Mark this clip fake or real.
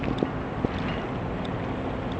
real